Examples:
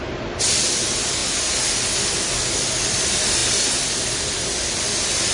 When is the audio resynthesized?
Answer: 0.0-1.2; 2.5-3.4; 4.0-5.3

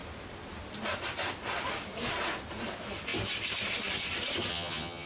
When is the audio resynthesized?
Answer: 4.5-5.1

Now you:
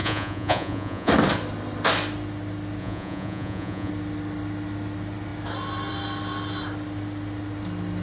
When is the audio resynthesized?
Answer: 0.0-1.1; 2.8-3.9

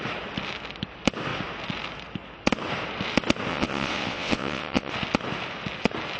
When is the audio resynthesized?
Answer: 3.5-4.9